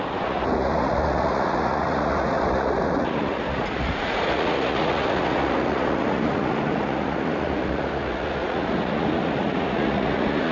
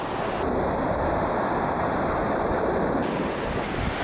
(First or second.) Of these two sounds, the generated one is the first